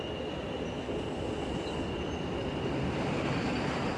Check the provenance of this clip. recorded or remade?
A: recorded